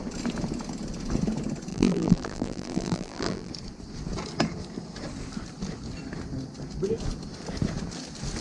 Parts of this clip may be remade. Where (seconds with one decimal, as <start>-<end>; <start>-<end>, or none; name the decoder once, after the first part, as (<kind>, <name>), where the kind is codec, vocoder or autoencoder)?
1.7-3.5 (vocoder, BigVGAN v2)